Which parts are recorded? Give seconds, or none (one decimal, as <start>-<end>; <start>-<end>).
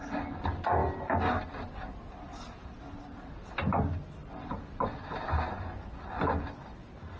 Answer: 0.0-7.2